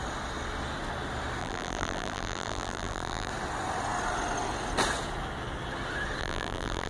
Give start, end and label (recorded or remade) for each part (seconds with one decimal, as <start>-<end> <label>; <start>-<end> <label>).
0.0-1.4 recorded; 1.4-3.3 remade; 3.3-6.2 recorded; 6.2-6.9 remade